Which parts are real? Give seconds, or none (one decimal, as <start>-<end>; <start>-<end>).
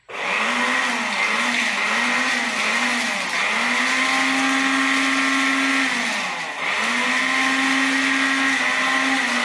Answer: 0.0-9.4